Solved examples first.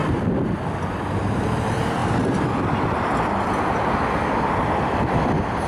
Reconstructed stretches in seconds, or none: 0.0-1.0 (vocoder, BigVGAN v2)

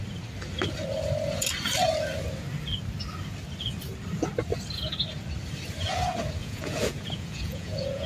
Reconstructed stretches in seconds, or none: 6.4-8.1 (vocoder, Vocos)

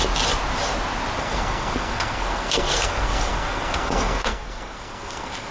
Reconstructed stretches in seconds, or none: 1.2-5.5 (codec, SNAC)